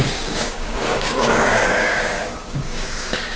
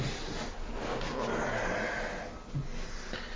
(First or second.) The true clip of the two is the second